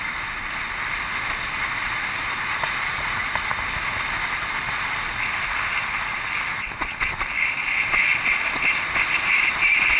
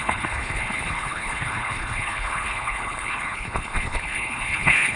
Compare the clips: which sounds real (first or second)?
first